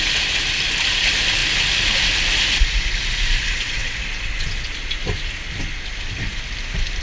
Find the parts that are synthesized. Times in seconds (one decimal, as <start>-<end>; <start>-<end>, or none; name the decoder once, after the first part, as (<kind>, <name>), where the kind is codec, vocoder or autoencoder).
none